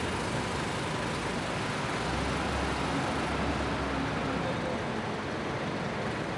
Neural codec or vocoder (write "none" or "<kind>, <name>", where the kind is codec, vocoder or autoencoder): none